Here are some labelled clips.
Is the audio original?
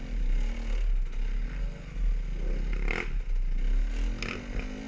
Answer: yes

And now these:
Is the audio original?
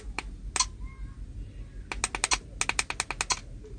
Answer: yes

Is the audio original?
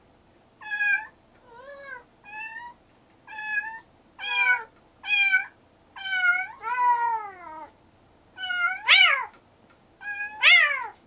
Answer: yes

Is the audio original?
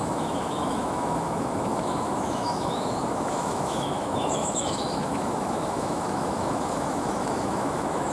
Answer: no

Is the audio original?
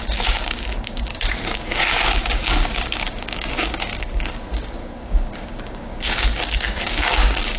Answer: no